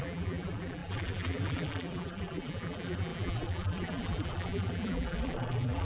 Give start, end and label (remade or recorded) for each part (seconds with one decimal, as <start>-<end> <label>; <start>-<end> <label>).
0.0-5.8 remade